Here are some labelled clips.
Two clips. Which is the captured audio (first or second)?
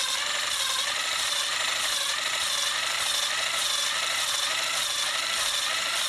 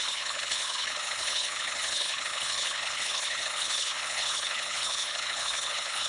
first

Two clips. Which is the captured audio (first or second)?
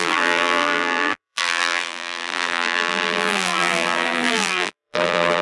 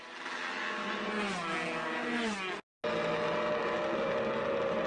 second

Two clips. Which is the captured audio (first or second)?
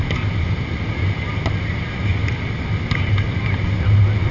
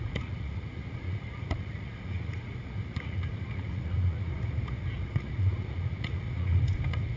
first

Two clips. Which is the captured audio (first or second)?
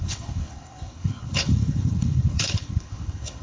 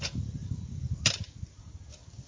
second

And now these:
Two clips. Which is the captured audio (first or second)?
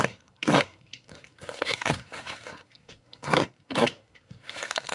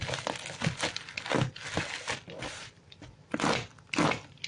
second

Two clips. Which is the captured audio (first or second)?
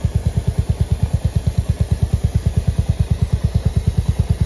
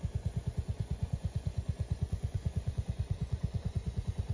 first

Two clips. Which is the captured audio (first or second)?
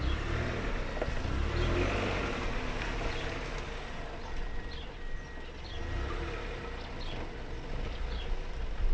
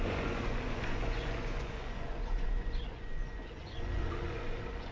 first